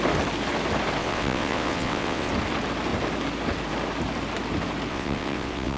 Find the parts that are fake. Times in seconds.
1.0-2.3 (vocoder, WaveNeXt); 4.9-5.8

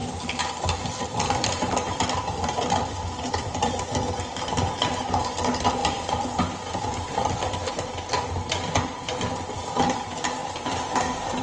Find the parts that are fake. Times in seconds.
1.1-3.8 (vocoder, BigVGAN v2); 5.8-7.7; 10.4-11.4

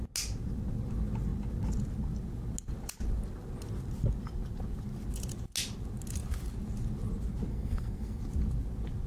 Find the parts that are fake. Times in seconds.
7.5-8.2 (codec, SNAC)

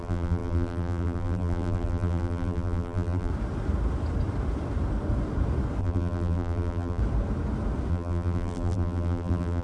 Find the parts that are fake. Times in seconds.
0.0-3.3 (vocoder, BigVGAN v2); 5.8-7.0; 7.9-9.6

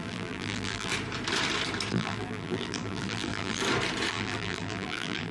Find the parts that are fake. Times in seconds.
0.0-0.9 (vocoder, BigVGAN v2); 1.9-3.6; 4.1-5.3